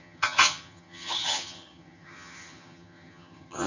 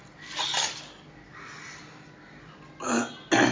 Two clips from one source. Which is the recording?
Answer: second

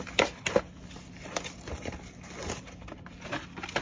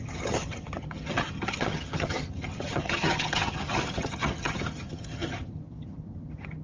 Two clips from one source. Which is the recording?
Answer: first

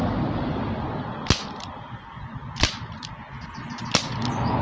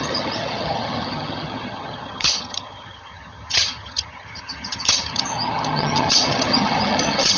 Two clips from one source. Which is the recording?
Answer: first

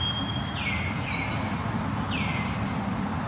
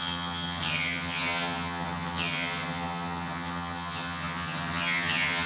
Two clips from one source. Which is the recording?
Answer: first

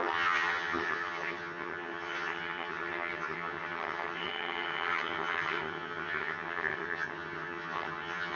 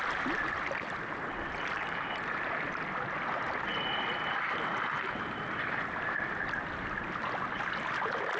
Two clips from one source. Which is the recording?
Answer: second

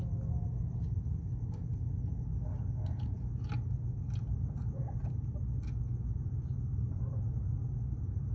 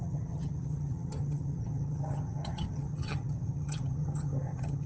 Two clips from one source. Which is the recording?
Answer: first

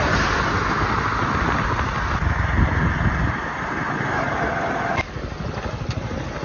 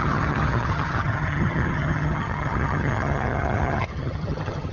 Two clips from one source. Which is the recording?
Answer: first